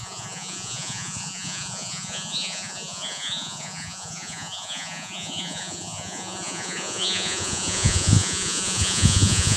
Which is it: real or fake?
fake